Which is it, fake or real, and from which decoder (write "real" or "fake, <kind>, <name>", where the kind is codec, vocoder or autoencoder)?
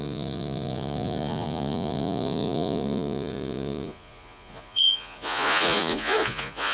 fake, vocoder, Vocos